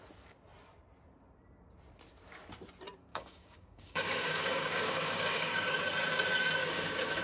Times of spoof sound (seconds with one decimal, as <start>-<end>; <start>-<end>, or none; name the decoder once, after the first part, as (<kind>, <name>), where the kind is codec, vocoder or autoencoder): 3.1-5.8 (codec, DAC); 6.6-7.2